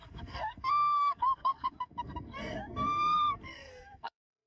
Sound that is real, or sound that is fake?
fake